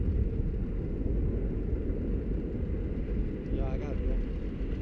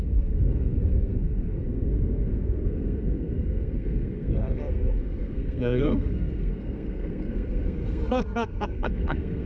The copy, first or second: second